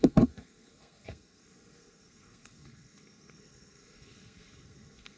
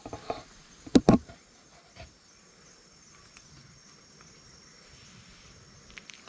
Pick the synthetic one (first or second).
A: first